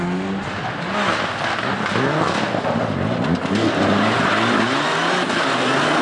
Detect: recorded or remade recorded